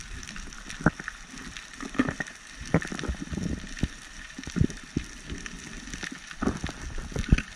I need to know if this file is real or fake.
real